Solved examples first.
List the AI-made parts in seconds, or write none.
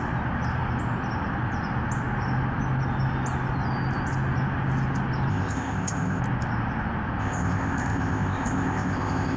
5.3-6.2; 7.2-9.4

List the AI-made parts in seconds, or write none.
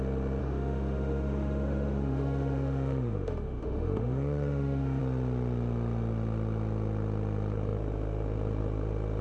0.4-5.0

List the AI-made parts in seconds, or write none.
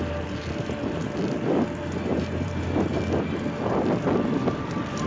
2.1-3.0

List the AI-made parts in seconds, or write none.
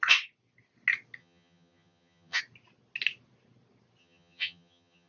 1.2-2.4; 4.0-5.1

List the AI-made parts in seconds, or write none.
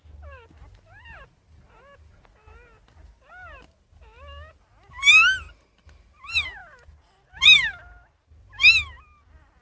none